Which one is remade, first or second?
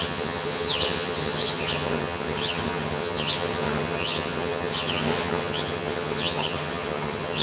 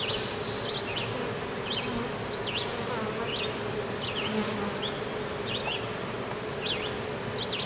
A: first